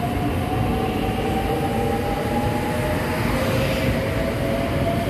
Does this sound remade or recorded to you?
recorded